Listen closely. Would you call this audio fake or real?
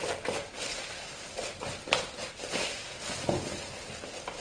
real